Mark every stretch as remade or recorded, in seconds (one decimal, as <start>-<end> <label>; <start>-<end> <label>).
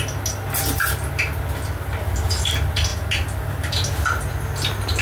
0.0-5.0 recorded